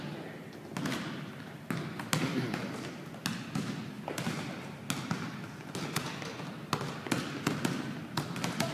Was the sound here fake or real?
real